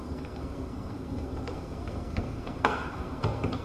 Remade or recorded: remade